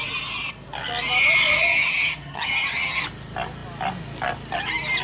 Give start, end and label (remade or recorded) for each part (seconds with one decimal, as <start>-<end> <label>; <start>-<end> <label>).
0.0-1.5 recorded; 1.5-3.0 remade; 3.0-5.0 recorded